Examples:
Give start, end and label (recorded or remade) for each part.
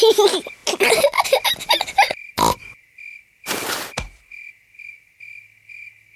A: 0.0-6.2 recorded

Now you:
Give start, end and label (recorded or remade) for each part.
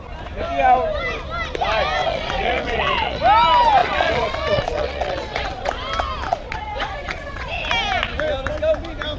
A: 0.0-2.0 recorded; 2.0-3.2 remade; 3.2-3.8 recorded; 3.8-5.7 remade; 5.7-6.3 recorded; 6.3-7.5 remade; 7.5-9.2 recorded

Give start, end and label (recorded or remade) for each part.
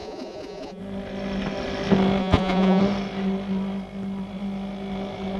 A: 0.0-0.8 remade; 0.8-2.2 recorded; 2.2-2.8 remade; 2.8-5.4 recorded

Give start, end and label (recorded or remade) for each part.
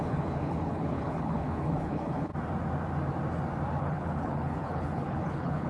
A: 0.0-2.3 remade; 2.3-3.8 recorded; 3.8-5.7 remade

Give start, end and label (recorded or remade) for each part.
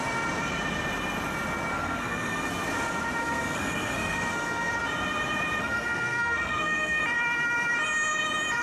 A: 0.0-1.7 recorded; 1.7-2.5 remade; 2.5-3.2 recorded; 3.2-4.7 remade; 4.7-5.6 recorded; 5.6-7.0 remade; 7.0-8.6 recorded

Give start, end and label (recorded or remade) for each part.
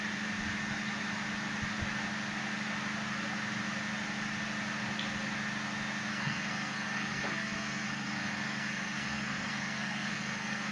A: 0.0-6.1 recorded; 6.1-10.7 remade